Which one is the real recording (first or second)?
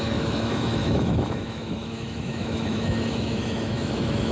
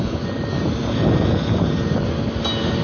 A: second